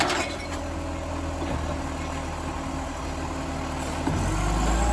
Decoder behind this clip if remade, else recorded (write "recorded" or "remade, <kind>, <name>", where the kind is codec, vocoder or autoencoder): recorded